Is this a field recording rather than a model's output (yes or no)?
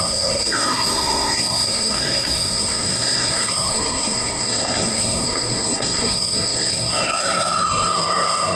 no